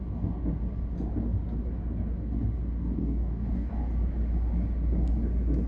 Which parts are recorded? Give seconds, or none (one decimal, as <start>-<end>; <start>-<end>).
0.0-3.0; 3.7-5.7

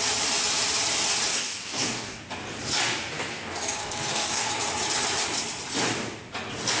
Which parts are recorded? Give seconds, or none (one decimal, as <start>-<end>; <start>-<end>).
0.0-1.3; 2.2-3.3; 4.5-6.8

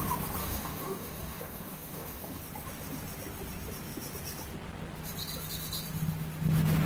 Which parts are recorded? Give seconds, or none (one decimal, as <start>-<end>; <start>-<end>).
0.0-0.4; 2.4-6.9

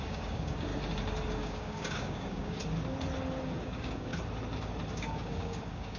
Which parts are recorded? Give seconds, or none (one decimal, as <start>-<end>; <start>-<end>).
0.7-1.3; 2.6-3.6; 4.1-4.9

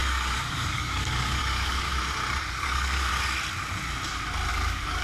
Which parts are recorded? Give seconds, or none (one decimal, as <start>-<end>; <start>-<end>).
1.9-2.5; 3.1-4.5

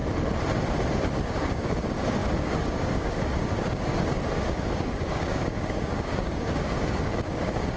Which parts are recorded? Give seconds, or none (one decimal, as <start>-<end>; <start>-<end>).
0.0-1.2